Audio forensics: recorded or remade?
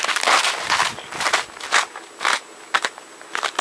recorded